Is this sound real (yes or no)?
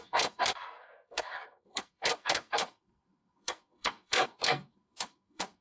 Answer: no